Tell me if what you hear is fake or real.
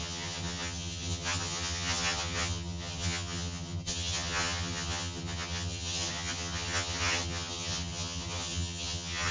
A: fake